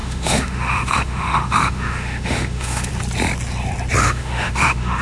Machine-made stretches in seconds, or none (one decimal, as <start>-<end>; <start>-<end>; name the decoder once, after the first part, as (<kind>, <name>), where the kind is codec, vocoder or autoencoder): 0.0-2.9 (autoencoder, DAC-VAE); 4.0-5.0